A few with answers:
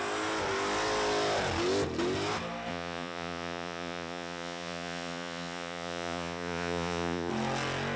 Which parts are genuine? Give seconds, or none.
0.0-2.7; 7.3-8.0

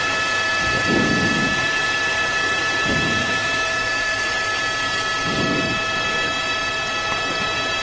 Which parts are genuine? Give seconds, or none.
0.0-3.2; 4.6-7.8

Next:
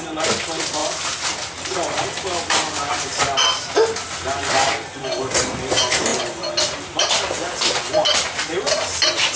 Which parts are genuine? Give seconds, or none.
0.0-9.4

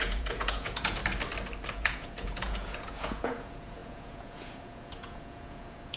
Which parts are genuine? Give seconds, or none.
1.0-1.7